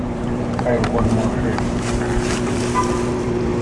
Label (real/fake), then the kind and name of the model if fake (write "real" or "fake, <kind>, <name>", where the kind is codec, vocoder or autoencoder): fake, vocoder, BigVGAN v2